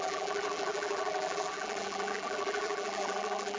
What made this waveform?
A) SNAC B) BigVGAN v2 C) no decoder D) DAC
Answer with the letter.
B